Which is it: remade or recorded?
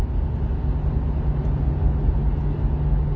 recorded